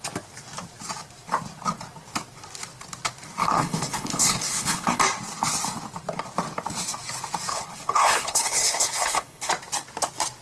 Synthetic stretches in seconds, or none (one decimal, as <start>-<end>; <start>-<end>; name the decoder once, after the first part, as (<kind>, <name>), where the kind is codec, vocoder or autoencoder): 3.4-5.0 (codec, HILCodec); 7.5-9.5